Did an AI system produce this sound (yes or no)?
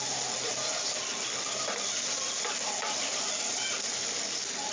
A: no